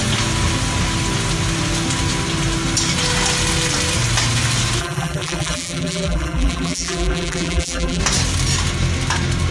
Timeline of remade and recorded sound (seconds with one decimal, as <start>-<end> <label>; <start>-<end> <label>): 0.0-4.8 recorded; 4.8-8.0 remade; 8.0-9.5 recorded